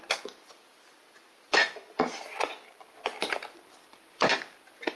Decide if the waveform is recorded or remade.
remade